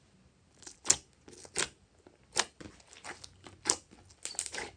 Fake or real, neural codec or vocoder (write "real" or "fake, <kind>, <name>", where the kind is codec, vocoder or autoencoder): real